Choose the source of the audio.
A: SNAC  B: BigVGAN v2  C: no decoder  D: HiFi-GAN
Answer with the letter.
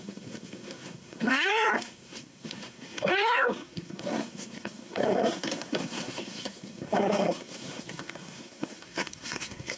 A